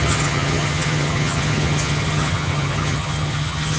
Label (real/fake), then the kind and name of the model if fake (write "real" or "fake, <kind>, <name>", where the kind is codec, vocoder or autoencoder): fake, vocoder, HiFi-GAN